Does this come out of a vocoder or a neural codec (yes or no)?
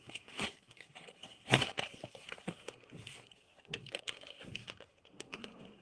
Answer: yes